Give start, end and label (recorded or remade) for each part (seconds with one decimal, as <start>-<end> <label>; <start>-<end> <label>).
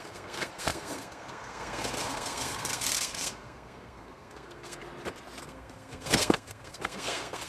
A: 0.0-4.8 remade; 4.8-5.4 recorded; 5.4-7.5 remade